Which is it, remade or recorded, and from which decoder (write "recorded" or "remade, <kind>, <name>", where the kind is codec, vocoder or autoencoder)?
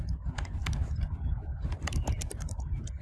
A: recorded